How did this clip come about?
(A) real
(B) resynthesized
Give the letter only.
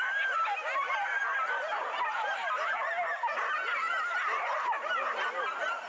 A